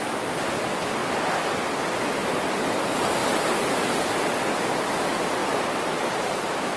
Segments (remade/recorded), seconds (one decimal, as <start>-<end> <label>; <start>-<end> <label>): 0.0-6.8 recorded